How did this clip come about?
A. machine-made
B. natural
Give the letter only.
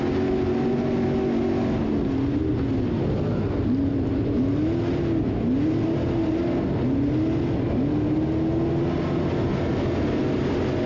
B